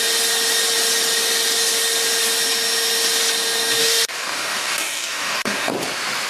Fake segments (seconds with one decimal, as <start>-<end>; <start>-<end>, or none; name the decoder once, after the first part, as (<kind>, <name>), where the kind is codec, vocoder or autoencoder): 3.8-5.7 (codec, DAC)